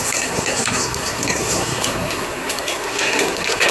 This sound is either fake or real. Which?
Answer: fake